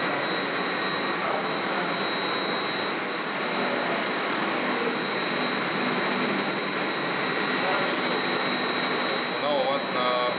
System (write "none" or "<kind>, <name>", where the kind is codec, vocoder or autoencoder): none